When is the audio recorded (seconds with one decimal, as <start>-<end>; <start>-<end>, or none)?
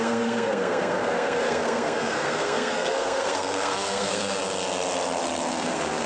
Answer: 4.4-5.5